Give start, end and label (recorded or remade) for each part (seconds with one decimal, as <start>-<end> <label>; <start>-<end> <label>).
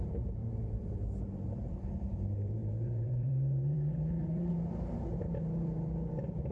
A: 0.0-0.4 remade; 0.4-1.7 recorded; 1.7-6.5 remade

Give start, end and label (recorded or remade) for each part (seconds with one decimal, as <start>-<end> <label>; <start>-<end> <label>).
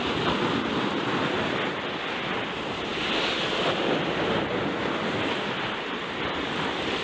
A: 0.0-7.0 recorded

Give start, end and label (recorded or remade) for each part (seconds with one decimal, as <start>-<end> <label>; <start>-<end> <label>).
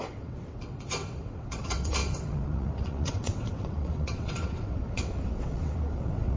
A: 0.0-6.4 remade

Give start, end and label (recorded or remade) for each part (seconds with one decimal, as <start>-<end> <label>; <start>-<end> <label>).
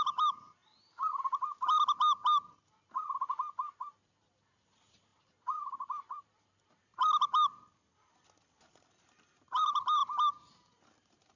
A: 0.0-0.6 remade; 0.6-3.8 recorded; 3.8-6.9 remade; 6.9-8.5 recorded; 8.5-10.0 remade; 10.0-10.5 recorded; 10.5-11.4 remade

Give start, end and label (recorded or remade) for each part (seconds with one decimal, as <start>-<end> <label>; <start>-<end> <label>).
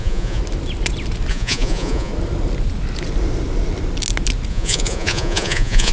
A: 0.0-0.4 remade; 0.4-1.3 recorded; 1.3-2.1 remade; 2.1-4.5 recorded; 4.5-5.9 remade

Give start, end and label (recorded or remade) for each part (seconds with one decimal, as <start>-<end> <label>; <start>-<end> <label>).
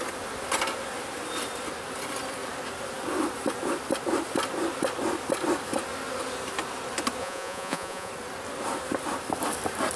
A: 0.0-7.2 recorded; 7.2-8.1 remade; 8.1-10.0 recorded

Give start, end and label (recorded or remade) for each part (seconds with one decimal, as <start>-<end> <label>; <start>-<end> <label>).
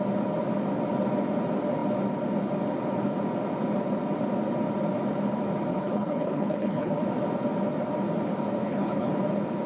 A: 0.0-5.7 recorded; 5.7-7.0 remade; 7.0-8.6 recorded; 8.6-9.1 remade; 9.1-9.7 recorded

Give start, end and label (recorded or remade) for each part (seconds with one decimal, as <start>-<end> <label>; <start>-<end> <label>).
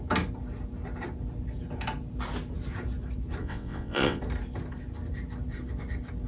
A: 0.0-3.4 recorded; 3.4-4.2 remade; 4.2-6.3 recorded